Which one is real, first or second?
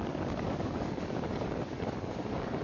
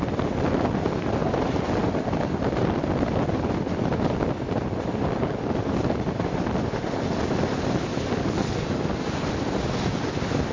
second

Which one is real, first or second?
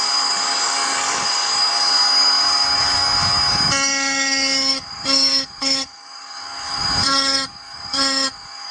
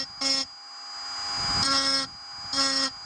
second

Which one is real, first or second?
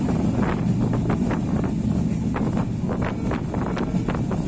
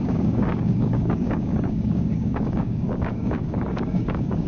first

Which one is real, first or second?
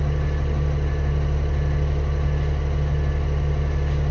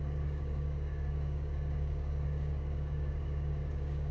first